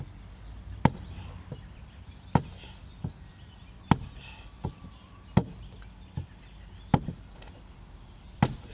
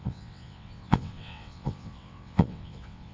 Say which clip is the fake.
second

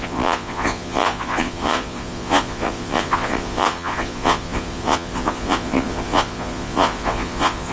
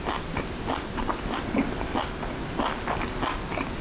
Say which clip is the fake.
first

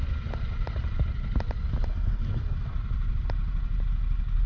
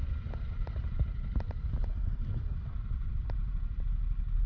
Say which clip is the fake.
second